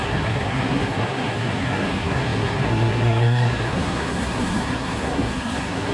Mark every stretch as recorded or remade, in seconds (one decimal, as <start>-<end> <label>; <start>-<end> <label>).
0.0-5.9 remade